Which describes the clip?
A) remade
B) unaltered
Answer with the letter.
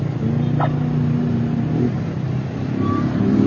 B